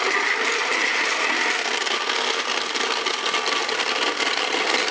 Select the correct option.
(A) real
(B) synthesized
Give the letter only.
A